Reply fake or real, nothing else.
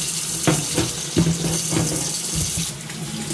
real